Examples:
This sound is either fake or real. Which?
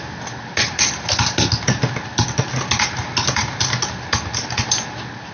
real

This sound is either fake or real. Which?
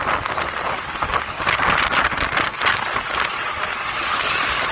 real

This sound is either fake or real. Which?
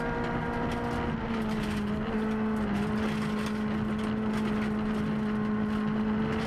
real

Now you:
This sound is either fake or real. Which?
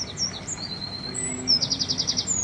real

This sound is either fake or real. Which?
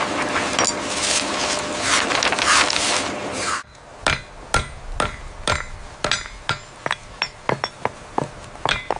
real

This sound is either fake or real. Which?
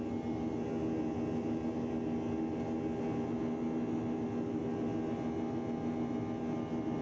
real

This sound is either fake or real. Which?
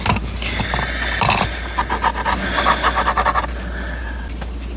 real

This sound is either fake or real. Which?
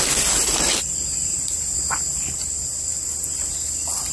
real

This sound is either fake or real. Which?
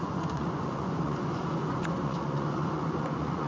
fake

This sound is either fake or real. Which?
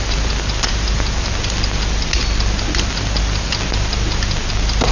real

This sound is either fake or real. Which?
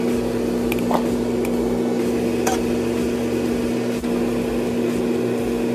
real